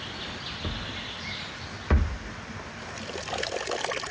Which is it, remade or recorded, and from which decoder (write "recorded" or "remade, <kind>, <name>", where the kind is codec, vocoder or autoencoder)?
recorded